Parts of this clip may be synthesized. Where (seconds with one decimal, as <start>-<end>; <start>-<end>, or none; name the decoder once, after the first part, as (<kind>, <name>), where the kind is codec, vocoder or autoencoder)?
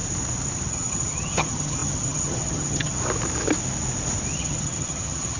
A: 0.7-3.0 (vocoder, HiFi-GAN); 4.3-5.4